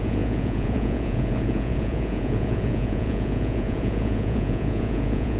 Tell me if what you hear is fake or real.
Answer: fake